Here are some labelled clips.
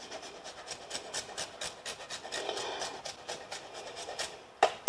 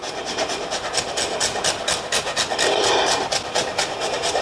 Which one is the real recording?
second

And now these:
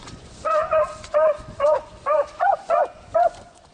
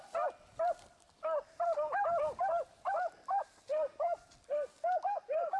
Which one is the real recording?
second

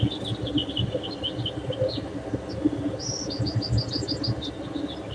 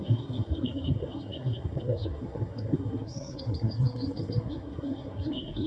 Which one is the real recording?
first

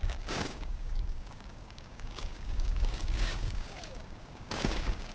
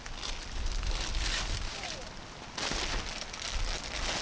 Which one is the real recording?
second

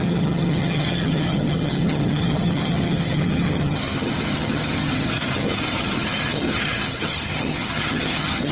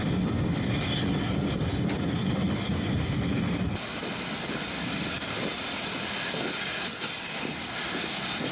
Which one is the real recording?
second